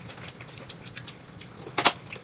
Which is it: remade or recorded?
recorded